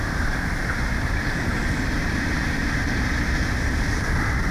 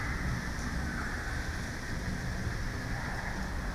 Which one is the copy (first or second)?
first